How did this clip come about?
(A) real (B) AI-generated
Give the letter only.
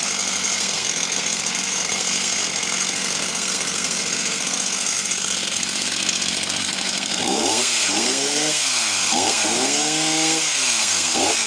B